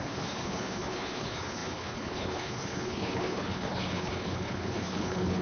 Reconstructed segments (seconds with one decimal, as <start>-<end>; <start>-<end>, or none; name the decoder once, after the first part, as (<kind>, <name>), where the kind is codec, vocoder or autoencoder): 0.0-5.4 (codec, HILCodec)